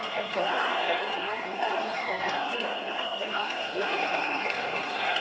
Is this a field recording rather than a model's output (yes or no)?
no